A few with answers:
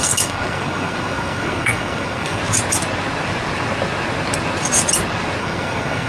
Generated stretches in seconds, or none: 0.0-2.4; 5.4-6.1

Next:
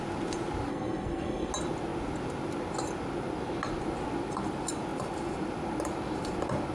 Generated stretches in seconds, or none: 0.7-1.5

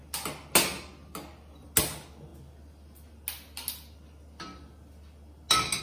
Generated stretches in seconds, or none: none

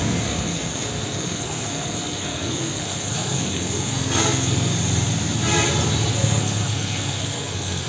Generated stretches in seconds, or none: 0.0-4.7; 6.1-7.9